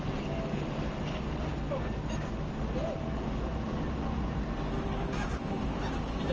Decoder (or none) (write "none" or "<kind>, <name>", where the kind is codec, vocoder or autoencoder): none